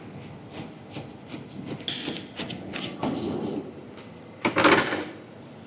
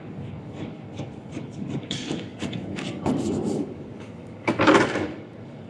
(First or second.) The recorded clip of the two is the first